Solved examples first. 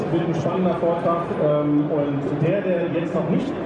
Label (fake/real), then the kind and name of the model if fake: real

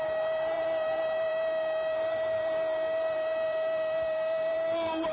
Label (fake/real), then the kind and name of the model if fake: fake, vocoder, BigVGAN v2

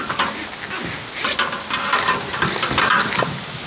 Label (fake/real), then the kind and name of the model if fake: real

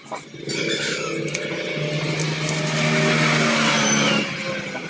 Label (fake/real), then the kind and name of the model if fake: real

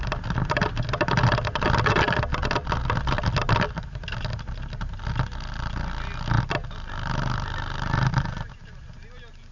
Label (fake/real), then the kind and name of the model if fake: real